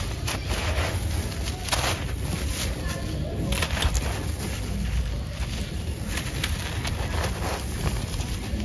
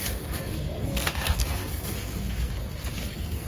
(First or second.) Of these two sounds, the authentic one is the first